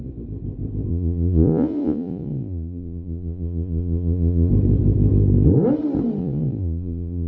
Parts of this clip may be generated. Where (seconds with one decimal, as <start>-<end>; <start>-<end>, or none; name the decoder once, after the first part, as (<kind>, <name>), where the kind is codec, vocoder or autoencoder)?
0.9-4.5 (vocoder, Vocos); 6.2-7.3